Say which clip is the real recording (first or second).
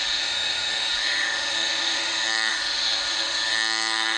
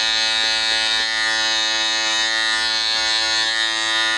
second